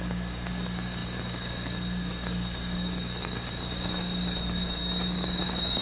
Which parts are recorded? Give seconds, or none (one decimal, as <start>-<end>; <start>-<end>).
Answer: none